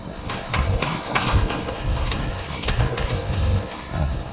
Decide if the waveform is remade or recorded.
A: remade